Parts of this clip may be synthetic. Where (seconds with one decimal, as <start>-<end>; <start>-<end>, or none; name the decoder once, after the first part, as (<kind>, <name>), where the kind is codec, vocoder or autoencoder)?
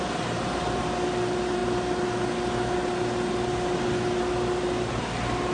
none